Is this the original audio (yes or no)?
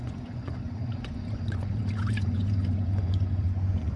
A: no